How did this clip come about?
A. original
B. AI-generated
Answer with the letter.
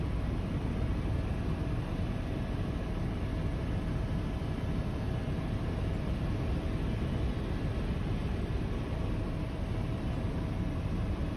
B